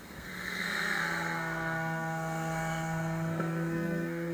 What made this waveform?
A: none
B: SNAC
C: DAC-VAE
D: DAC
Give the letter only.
B